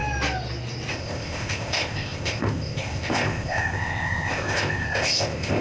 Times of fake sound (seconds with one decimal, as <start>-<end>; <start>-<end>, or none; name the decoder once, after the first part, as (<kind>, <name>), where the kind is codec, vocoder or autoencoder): 0.9-5.6 (codec, ZipCodec)

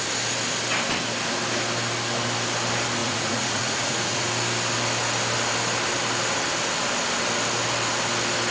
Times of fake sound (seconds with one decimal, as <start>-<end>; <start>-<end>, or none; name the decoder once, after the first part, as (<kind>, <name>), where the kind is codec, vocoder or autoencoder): 3.0-4.3 (vocoder, Vocos)